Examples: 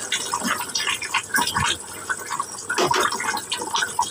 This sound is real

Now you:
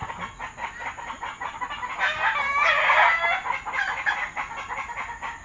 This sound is real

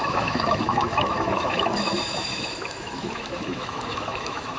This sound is fake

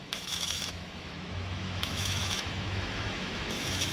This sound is fake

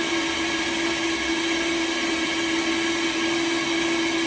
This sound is real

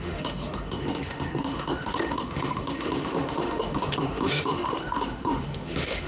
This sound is fake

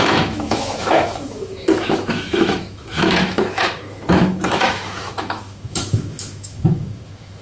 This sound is fake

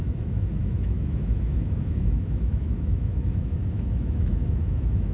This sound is fake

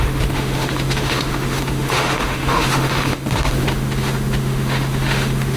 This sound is fake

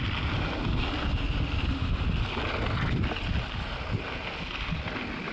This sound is real